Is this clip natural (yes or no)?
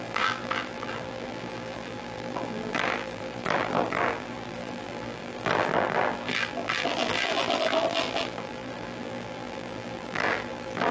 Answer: no